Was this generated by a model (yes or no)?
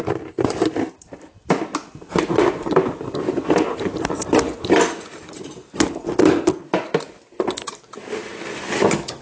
no